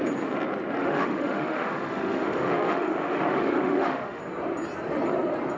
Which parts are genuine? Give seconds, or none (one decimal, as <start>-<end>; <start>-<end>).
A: 0.0-0.8; 4.2-5.6